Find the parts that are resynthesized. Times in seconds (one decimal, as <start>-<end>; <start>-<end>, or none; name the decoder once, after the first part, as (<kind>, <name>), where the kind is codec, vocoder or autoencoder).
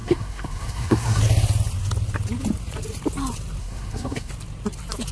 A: 0.0-1.2 (codec, SNAC); 3.6-4.3